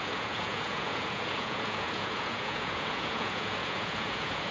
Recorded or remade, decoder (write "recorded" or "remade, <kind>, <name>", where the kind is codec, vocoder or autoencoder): remade, vocoder, Vocos